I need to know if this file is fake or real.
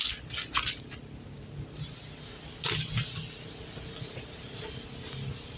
real